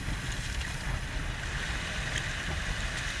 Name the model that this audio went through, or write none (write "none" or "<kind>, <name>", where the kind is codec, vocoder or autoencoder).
none